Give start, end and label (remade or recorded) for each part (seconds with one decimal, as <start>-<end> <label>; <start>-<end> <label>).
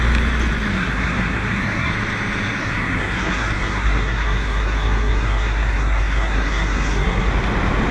0.0-0.7 recorded; 0.7-1.9 remade; 1.9-2.6 recorded; 2.6-7.3 remade; 7.3-7.9 recorded